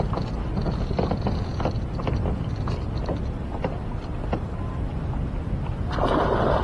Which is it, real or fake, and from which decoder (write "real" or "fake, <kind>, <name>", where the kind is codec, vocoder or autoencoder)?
real